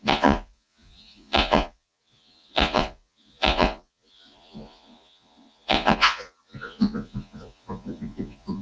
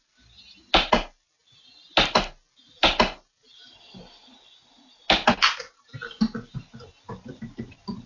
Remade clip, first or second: first